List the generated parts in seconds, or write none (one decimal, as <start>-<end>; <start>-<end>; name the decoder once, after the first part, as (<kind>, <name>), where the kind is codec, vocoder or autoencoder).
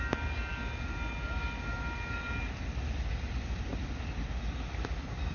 none